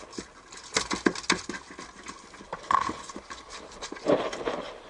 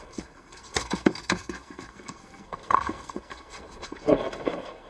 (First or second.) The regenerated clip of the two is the second